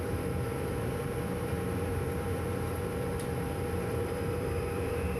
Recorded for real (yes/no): no